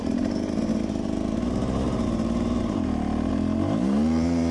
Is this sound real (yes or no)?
no